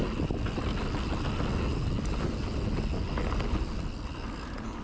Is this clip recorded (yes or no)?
yes